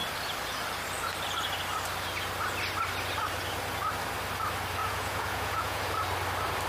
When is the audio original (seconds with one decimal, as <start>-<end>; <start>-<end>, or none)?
0.0-4.8; 5.8-6.7